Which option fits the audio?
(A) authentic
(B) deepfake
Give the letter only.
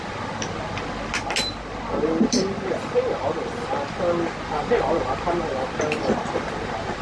A